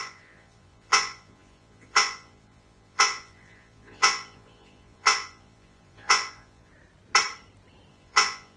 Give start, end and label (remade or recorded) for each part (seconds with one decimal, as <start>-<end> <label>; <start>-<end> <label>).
0.0-6.7 remade; 6.7-7.9 recorded; 7.9-8.6 remade